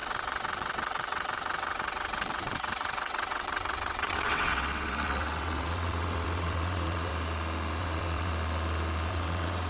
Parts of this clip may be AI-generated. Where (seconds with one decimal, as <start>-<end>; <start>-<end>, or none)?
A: 0.0-7.1; 7.8-8.3; 9.1-9.7